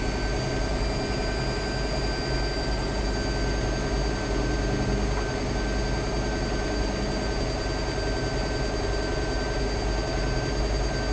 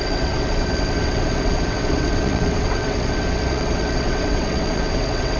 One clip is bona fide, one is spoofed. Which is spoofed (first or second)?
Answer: second